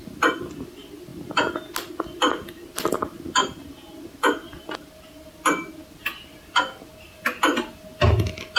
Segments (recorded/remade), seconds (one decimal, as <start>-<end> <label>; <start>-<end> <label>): 0.0-8.6 recorded